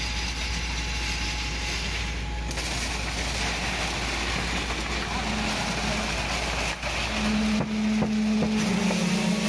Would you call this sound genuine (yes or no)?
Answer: yes